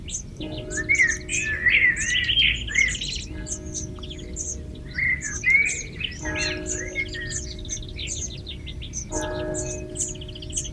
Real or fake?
real